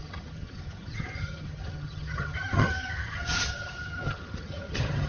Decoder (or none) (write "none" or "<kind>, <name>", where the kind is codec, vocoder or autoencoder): vocoder, HiFi-GAN